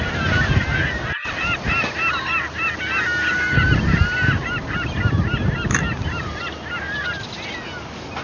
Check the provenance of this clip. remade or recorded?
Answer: recorded